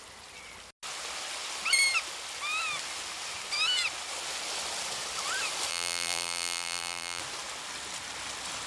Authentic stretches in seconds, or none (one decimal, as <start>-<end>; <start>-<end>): 0.0-5.7; 7.2-8.7